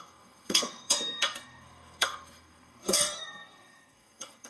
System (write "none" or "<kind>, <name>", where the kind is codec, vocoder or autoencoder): codec, SNAC